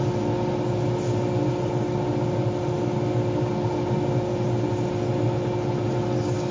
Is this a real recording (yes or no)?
yes